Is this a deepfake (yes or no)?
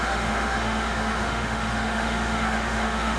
yes